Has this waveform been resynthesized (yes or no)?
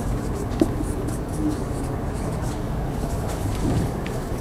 yes